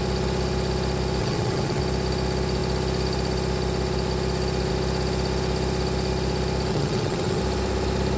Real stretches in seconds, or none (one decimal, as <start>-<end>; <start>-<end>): 0.0-1.2; 1.8-6.7; 7.4-8.2